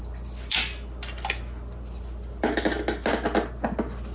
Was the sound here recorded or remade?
recorded